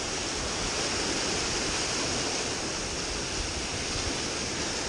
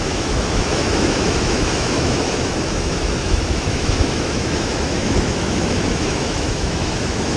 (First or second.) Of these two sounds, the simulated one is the second